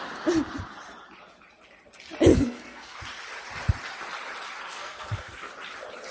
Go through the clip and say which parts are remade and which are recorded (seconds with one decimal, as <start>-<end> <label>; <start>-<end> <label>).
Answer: 0.0-2.3 recorded; 2.3-3.0 remade; 3.0-4.7 recorded; 4.7-5.5 remade; 5.5-6.1 recorded